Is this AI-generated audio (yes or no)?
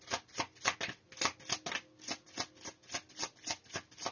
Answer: no